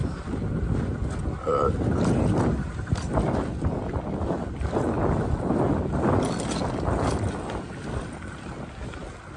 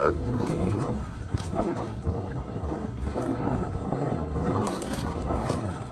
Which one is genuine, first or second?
first